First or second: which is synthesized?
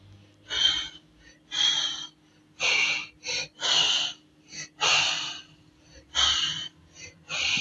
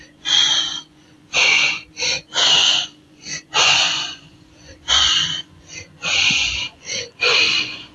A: second